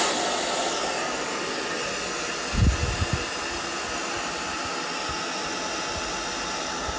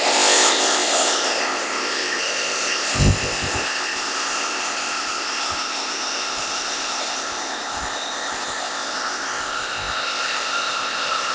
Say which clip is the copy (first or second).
second